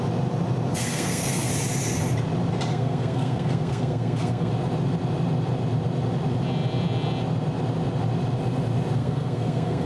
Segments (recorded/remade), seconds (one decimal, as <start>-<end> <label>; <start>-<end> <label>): 0.0-0.7 recorded; 0.7-1.5 remade; 1.5-2.7 recorded; 2.7-4.5 remade; 4.5-9.0 recorded; 9.0-9.9 remade